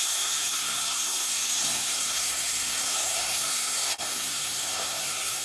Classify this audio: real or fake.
fake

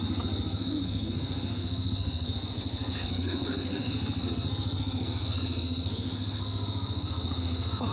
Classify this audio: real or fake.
fake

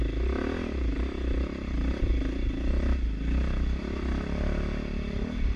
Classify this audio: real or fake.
real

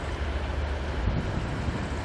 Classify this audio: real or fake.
real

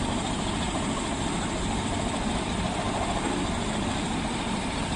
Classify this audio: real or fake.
real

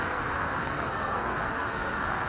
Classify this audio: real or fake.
fake